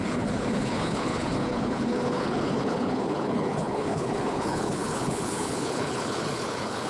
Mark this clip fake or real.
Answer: fake